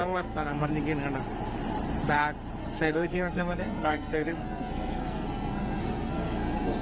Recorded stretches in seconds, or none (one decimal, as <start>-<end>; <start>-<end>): 0.7-2.6